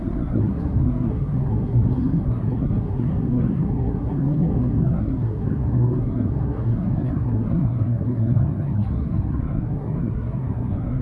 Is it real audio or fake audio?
fake